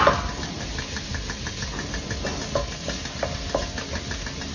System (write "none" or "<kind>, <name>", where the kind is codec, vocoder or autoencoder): none